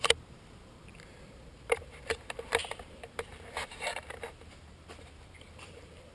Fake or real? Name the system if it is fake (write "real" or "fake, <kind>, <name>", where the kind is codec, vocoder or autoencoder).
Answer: fake, vocoder, BigVGAN v2